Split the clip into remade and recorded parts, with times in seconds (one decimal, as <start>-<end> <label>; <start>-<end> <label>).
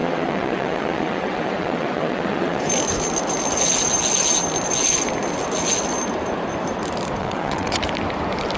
0.0-2.6 remade; 2.6-7.2 recorded; 7.2-7.8 remade; 7.8-8.6 recorded